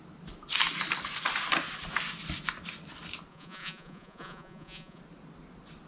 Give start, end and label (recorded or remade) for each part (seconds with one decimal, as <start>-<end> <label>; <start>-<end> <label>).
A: 0.0-3.3 recorded; 3.3-5.0 remade; 5.0-5.9 recorded